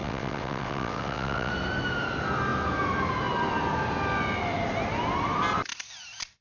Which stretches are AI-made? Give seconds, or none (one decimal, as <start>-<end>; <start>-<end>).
0.0-1.5